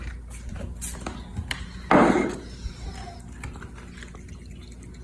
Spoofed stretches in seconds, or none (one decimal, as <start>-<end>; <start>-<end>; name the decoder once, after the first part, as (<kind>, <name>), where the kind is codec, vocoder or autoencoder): none